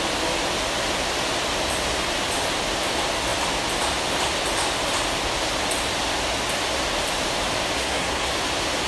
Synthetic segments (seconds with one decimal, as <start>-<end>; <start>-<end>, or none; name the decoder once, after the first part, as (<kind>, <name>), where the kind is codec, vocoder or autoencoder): 7.8-8.3 (codec, SNAC)